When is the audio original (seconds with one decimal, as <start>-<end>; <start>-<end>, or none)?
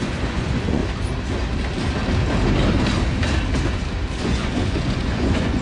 0.8-4.2